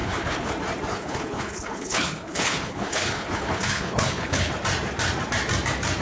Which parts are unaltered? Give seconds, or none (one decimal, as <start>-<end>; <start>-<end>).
0.5-0.9; 4.5-6.0